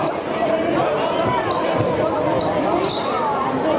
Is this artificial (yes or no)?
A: no